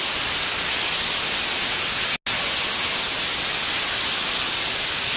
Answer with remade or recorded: recorded